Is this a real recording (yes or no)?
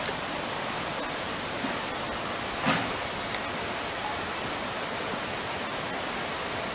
yes